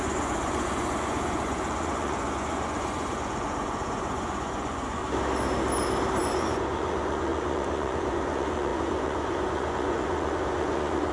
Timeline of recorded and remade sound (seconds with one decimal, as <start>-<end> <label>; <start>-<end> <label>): 0.0-5.0 remade; 5.0-6.2 recorded; 6.2-11.1 remade